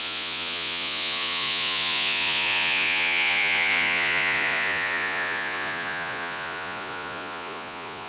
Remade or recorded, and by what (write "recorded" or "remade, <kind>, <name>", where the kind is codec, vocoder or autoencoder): remade, vocoder, Vocos